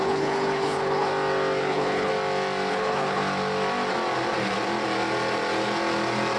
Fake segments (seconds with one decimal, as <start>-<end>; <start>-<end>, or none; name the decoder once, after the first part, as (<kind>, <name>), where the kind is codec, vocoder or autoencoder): 0.0-1.1 (codec, HILCodec); 1.6-2.1; 2.7-3.2

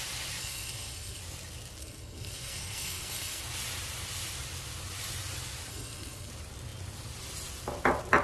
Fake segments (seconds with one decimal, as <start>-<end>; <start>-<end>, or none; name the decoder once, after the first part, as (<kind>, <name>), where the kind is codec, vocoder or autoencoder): 0.4-1.2 (codec, SNAC); 1.8-3.4; 5.7-6.3

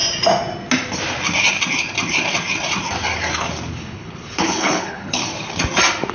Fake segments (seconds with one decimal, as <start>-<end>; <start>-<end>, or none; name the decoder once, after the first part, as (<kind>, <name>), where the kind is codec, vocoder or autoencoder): 3.7-5.2 (codec, HILCodec)

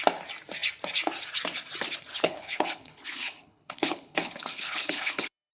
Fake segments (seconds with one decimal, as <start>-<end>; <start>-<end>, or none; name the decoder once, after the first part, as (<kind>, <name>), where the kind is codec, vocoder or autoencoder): 2.1-5.5 (codec, HILCodec)

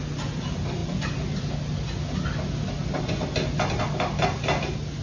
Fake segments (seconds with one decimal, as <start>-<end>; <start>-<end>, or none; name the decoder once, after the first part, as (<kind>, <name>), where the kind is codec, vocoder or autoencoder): none

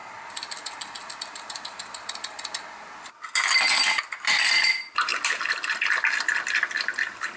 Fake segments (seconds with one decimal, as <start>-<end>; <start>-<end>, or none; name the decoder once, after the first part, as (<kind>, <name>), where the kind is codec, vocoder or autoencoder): none

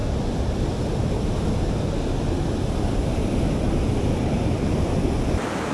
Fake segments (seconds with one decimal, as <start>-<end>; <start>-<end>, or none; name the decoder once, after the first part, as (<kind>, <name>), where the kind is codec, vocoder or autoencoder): none

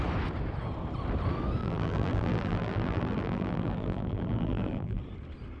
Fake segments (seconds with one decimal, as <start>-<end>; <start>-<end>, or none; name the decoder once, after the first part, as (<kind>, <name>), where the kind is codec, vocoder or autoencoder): 1.6-5.0 (vocoder, BigVGAN v2)